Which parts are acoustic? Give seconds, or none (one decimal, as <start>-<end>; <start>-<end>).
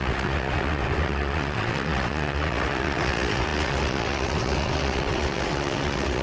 none